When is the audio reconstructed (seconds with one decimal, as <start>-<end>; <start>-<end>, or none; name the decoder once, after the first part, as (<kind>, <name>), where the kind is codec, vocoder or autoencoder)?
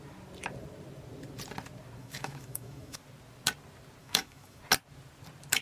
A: 2.0-3.0 (autoencoder, DAC-VAE); 4.0-4.6